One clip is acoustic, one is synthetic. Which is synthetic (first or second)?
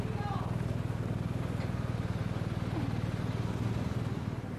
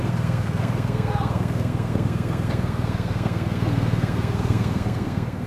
second